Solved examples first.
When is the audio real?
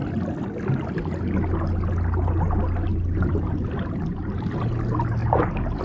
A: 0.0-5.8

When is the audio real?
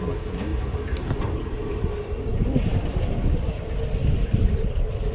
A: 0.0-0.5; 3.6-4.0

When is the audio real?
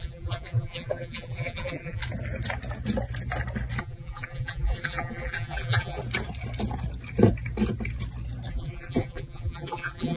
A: 2.0-3.8; 6.0-8.5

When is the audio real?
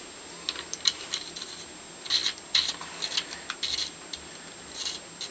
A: 0.0-5.3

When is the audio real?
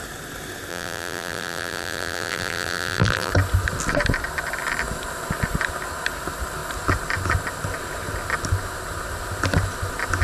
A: 0.0-0.7; 3.3-10.2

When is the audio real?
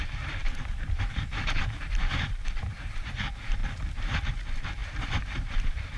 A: 3.6-4.3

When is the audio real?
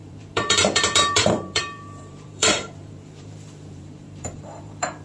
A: none